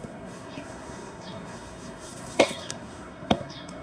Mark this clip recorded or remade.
remade